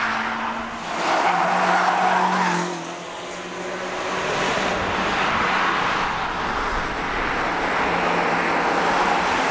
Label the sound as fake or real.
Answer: real